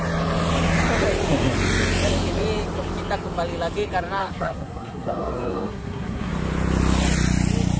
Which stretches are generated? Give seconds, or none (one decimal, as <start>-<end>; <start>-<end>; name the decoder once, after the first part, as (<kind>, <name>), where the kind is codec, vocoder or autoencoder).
4.2-6.3 (codec, SNAC)